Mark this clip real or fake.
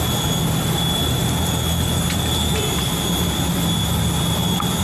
real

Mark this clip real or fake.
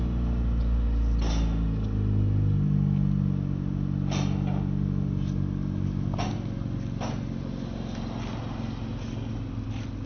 real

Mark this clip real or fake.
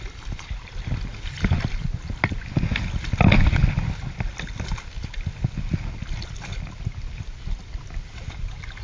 real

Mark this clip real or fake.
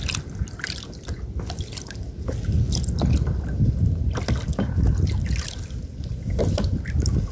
real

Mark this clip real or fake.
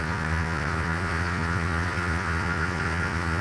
fake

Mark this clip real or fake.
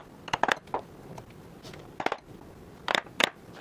real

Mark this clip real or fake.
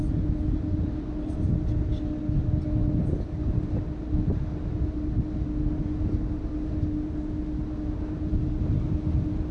real